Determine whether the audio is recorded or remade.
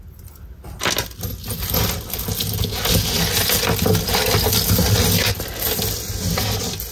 recorded